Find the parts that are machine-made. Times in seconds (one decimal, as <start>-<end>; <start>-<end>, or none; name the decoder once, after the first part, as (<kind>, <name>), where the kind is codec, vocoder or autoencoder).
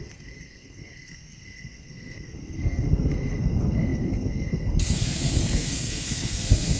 0.0-6.8 (codec, SNAC)